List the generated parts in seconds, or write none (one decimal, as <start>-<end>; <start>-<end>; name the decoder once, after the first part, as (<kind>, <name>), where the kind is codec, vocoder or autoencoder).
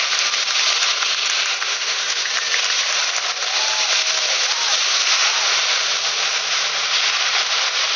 1.7-2.3 (autoencoder, DAC-VAE)